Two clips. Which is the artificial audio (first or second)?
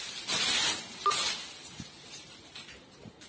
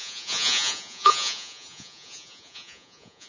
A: second